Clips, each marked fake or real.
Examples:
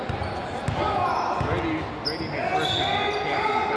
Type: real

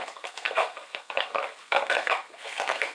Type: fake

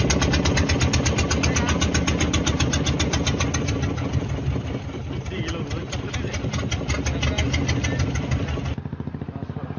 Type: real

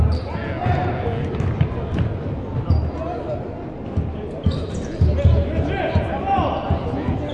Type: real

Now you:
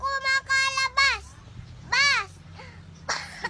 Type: real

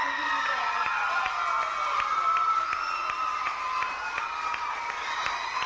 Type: real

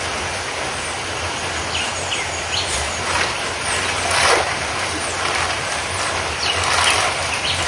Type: real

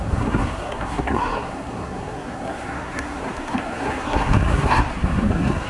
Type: fake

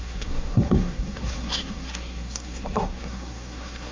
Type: fake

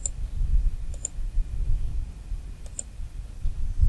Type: real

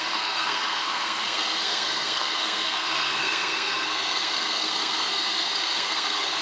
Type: fake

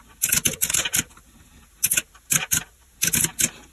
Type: real